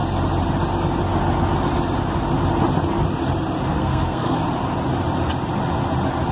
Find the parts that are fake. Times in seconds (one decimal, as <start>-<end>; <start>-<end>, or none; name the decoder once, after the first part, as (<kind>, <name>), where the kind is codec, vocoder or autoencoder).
3.7-4.4 (codec, SNAC)